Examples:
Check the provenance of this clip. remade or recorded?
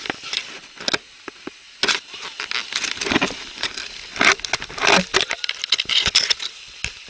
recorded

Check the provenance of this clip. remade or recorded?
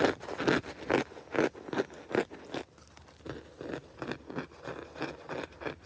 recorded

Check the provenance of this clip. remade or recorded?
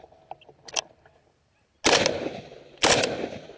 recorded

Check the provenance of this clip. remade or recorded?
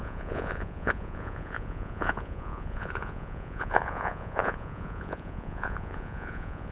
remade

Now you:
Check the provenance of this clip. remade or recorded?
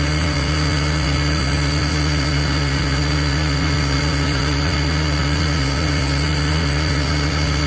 remade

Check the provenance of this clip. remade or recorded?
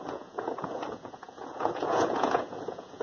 remade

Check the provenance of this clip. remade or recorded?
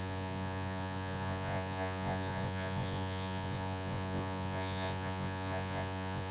remade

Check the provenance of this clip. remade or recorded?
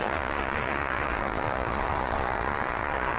remade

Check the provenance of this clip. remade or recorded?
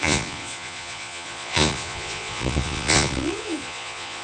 remade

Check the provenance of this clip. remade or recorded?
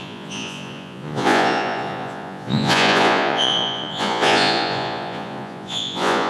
remade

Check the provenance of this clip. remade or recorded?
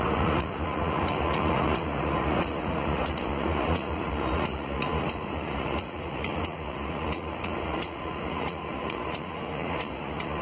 remade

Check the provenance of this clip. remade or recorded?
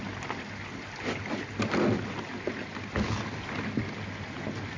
recorded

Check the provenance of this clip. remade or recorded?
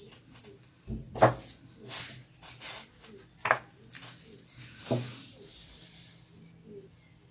recorded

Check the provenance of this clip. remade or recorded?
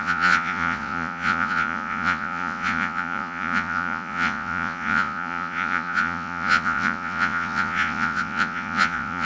remade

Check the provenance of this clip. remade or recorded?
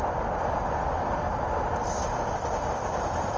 recorded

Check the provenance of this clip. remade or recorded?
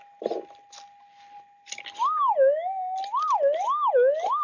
recorded